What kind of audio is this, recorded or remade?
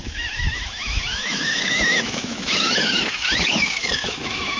remade